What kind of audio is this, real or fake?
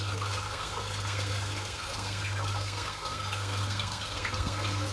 fake